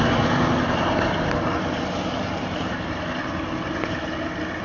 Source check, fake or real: real